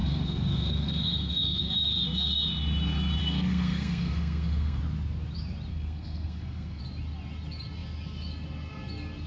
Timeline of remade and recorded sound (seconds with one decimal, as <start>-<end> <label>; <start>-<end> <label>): 0.0-1.6 remade; 1.6-3.2 recorded; 3.2-4.8 remade; 4.8-5.7 recorded; 5.7-6.8 remade; 6.8-9.3 recorded